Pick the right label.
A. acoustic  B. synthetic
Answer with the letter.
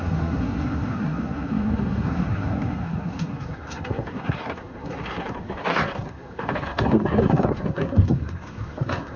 B